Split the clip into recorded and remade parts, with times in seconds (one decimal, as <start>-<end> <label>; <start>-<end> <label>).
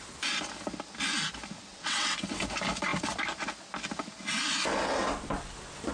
0.0-1.7 recorded; 1.7-2.4 remade; 2.4-5.9 recorded